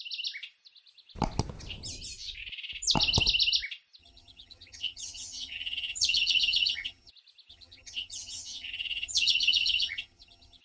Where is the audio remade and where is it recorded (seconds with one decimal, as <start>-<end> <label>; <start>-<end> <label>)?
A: 0.0-4.0 recorded; 4.0-7.1 remade; 7.1-7.5 recorded; 7.5-10.6 remade